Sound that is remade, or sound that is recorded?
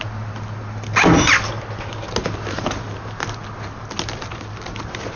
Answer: recorded